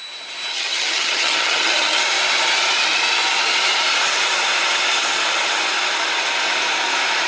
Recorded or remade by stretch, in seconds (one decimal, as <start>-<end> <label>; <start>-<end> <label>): 0.0-0.5 recorded; 0.5-2.0 remade; 2.0-7.3 recorded

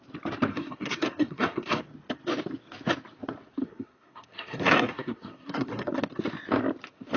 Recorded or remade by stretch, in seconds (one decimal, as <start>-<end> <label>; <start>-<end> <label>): 0.0-0.5 recorded; 0.5-1.8 remade; 1.8-3.6 recorded; 3.6-6.0 remade; 6.0-7.2 recorded

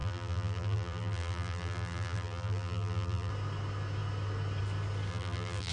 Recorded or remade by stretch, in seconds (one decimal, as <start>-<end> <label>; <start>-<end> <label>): 0.0-3.3 remade; 3.3-5.1 recorded; 5.1-5.7 remade

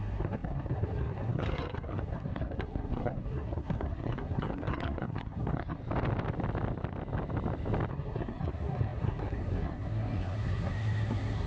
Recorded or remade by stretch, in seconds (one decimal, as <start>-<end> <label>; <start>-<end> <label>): 0.0-5.8 remade; 5.8-7.9 recorded; 7.9-11.5 remade

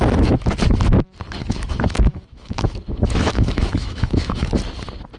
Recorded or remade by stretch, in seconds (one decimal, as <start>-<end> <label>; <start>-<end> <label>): 0.0-1.4 recorded; 1.4-4.5 remade; 4.5-5.2 recorded